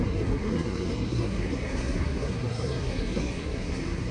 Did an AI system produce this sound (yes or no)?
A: yes